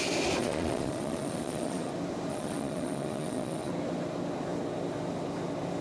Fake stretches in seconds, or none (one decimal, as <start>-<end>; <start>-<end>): 0.4-1.9; 2.3-3.7

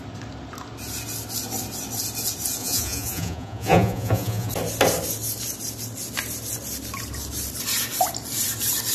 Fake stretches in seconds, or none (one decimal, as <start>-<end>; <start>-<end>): 2.6-4.5

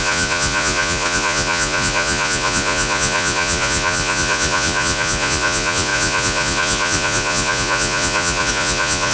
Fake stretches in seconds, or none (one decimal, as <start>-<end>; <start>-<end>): 0.0-9.1